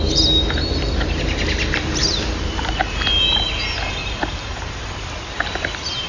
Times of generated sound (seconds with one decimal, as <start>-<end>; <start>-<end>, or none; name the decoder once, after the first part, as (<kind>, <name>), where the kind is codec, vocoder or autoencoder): 2.0-2.7 (vocoder, BigVGAN v2); 4.0-4.9